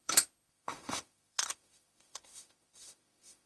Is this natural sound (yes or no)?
no